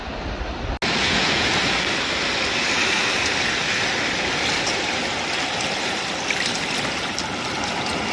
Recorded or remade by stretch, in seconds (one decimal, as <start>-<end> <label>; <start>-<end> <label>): 0.0-1.0 recorded; 1.0-1.5 remade; 1.5-8.1 recorded